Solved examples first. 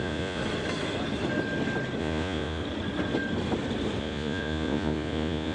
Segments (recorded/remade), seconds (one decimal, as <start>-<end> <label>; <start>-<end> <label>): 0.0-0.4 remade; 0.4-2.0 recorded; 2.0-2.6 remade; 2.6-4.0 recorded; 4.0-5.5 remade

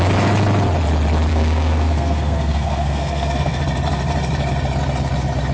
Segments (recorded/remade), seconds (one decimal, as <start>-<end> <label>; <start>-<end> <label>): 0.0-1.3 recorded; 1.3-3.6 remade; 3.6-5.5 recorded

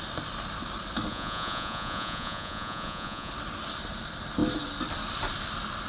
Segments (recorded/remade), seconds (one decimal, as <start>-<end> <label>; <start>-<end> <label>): 0.0-1.1 recorded; 1.1-3.3 remade; 3.3-5.9 recorded

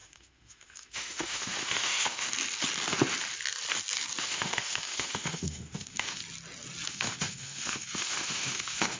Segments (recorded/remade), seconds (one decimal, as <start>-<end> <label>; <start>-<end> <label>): 0.0-2.3 remade; 2.3-4.2 recorded; 4.2-6.2 remade; 6.2-6.9 recorded; 6.9-9.0 remade

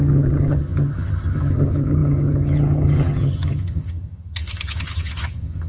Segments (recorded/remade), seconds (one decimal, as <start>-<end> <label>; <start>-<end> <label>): 0.0-5.7 remade

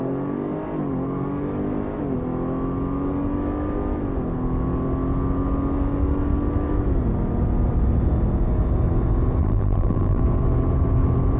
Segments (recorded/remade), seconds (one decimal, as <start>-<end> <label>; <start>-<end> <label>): 0.0-9.4 recorded; 9.4-10.2 remade; 10.2-11.4 recorded

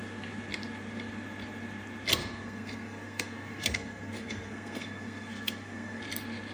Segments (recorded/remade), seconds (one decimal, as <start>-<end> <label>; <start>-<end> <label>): 0.0-2.2 recorded; 2.2-6.0 remade; 6.0-6.5 recorded